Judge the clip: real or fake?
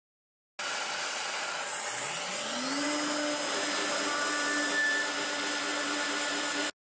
real